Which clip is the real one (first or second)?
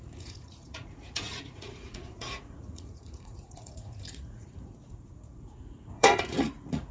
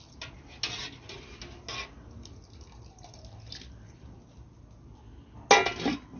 second